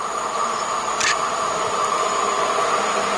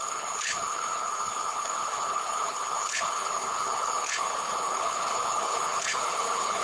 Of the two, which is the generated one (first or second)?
second